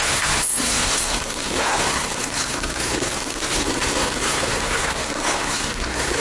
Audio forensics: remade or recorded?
remade